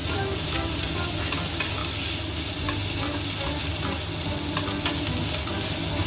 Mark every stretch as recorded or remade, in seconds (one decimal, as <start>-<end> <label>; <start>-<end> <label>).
0.0-0.5 remade; 0.5-6.1 recorded